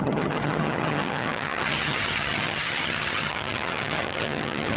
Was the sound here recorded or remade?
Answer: remade